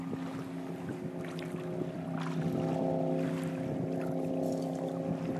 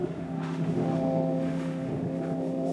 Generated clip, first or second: second